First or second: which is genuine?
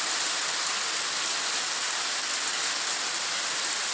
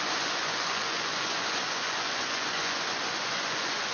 first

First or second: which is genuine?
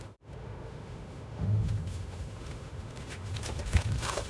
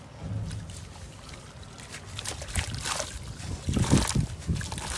second